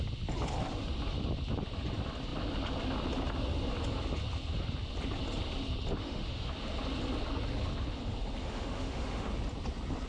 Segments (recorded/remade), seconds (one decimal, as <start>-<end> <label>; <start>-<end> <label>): 0.0-6.0 recorded; 6.0-6.5 remade; 6.5-8.4 recorded; 8.4-9.3 remade; 9.3-10.1 recorded